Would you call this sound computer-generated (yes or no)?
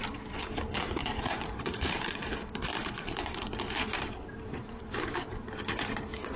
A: yes